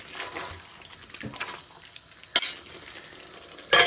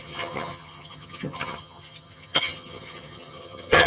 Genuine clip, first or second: first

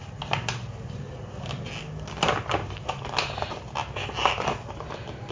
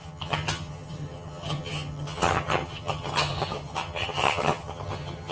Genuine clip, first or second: first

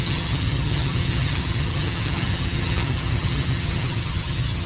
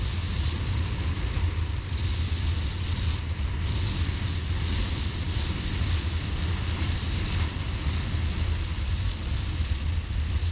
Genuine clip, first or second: second